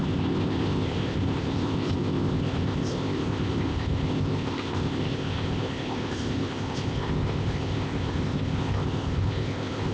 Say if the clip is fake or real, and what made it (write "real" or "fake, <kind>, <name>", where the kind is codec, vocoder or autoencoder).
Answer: fake, codec, ZipCodec